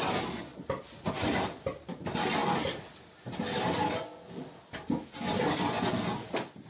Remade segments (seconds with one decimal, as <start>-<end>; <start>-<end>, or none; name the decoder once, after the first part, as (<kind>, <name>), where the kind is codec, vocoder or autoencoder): none